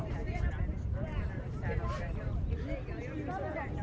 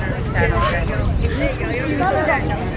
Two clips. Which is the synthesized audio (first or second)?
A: first